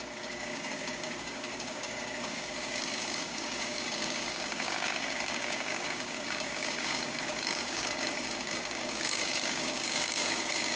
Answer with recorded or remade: remade